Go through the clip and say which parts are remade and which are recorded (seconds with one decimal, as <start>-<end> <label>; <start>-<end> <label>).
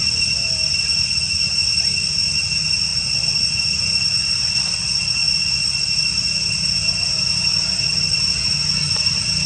0.0-9.5 recorded